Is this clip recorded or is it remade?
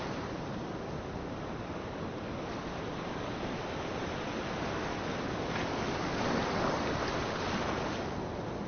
recorded